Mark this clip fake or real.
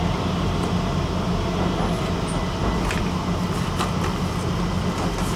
real